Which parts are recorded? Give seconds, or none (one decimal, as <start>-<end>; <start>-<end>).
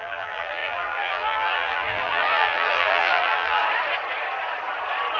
3.6-5.2